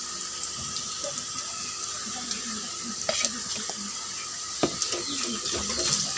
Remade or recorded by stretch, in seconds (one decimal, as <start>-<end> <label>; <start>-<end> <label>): 0.0-6.2 recorded

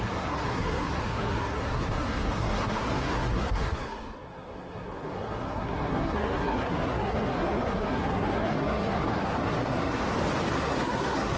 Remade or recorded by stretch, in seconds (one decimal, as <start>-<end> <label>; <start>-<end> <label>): 0.0-10.0 remade; 10.0-10.5 recorded; 10.5-11.4 remade

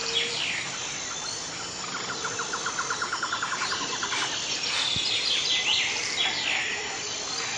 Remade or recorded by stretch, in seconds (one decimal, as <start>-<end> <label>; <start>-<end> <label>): 0.0-7.6 recorded